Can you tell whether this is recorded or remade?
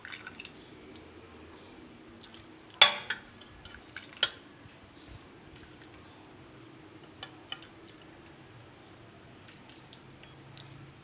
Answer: recorded